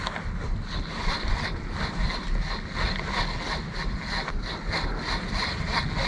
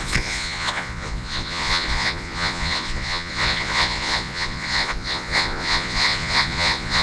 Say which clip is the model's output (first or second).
second